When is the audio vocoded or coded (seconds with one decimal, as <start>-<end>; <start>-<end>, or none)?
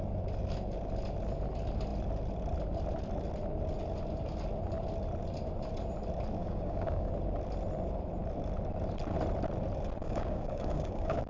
6.4-7.1; 10.0-11.3